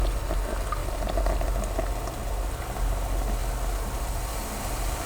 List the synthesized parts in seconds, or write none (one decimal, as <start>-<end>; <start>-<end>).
3.4-5.1

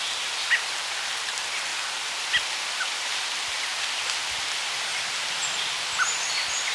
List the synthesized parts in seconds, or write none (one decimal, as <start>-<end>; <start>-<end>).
0.0-1.7; 2.7-3.7; 4.2-4.9; 5.9-6.7